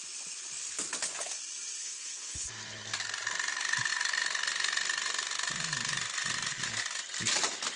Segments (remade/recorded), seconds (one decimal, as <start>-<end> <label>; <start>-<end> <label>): 0.0-1.8 recorded; 1.8-2.5 remade; 2.5-7.8 recorded